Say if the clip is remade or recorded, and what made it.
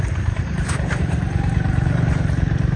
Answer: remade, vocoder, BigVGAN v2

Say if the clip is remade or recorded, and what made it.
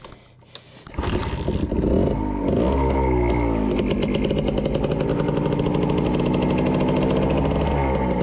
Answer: recorded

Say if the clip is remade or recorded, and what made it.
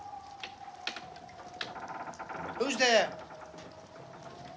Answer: recorded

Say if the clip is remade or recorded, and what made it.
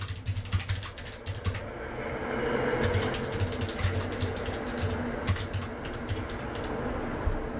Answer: recorded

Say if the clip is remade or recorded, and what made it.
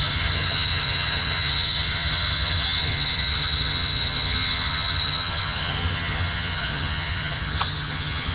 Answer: remade, vocoder, HiFi-GAN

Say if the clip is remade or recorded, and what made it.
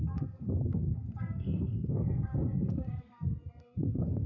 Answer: remade, codec, SNAC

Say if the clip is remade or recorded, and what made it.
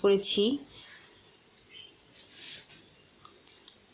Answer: remade, vocoder, BigVGAN v2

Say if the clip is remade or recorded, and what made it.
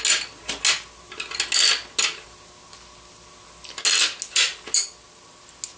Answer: recorded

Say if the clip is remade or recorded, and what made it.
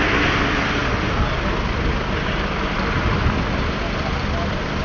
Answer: recorded